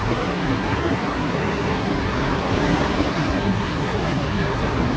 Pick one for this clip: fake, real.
fake